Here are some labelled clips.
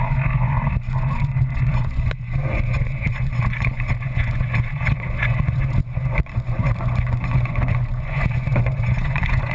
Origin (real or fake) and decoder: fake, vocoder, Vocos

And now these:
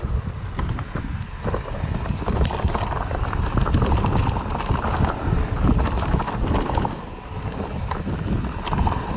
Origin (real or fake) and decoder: real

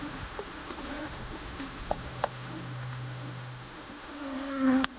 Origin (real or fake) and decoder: fake, autoencoder, DAC-VAE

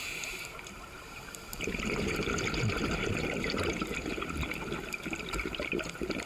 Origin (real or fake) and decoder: real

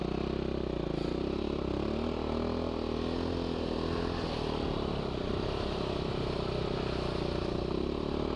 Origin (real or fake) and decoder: real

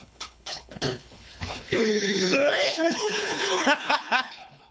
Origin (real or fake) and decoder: fake, codec, HILCodec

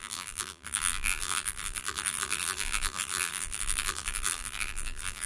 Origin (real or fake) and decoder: fake, vocoder, BigVGAN v2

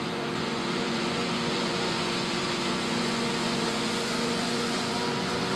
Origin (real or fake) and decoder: fake, vocoder, Vocos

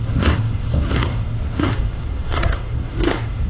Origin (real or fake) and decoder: fake, codec, SNAC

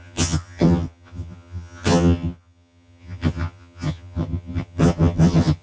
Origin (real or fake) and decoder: fake, vocoder, HiFi-GAN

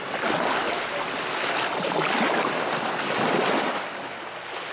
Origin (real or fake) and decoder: real